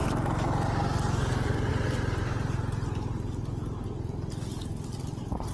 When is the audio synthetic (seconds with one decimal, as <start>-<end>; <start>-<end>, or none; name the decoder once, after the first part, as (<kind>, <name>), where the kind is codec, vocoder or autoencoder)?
none